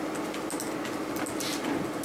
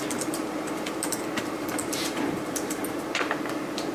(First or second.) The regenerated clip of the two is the second